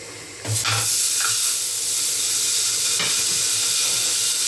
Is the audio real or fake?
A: real